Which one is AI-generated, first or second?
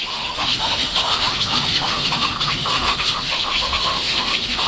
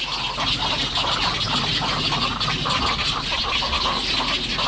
first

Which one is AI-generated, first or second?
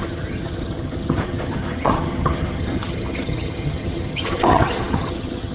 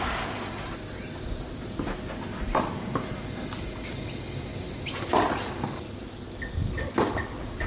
first